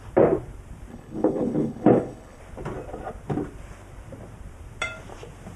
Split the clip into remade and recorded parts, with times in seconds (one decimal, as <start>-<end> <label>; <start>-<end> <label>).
0.0-0.9 recorded; 0.9-2.4 remade; 2.4-5.6 recorded